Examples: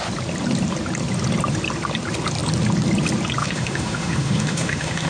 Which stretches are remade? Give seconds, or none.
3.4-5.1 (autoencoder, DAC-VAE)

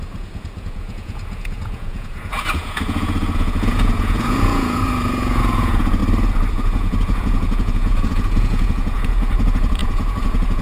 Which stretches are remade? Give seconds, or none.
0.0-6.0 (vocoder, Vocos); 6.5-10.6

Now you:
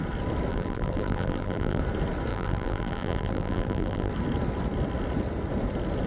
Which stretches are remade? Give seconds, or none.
0.5-1.8 (vocoder, BigVGAN v2); 2.3-4.1

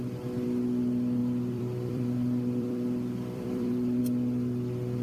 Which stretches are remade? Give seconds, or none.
1.2-4.0 (vocoder, BigVGAN v2)

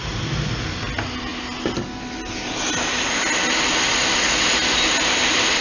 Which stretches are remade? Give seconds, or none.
none

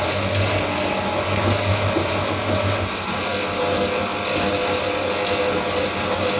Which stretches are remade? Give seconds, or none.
none

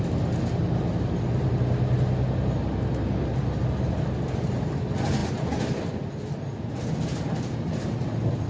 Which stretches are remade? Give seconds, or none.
none